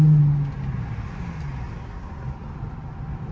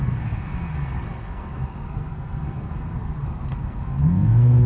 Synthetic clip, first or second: second